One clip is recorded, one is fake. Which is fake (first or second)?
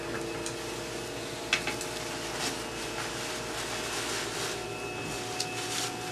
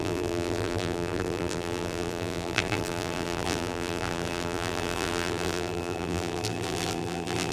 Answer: second